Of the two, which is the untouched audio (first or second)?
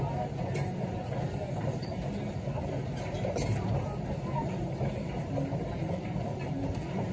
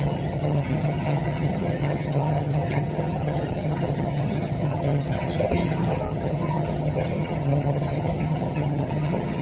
first